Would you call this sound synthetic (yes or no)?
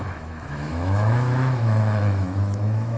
yes